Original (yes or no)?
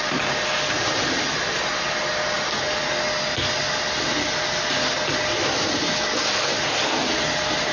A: yes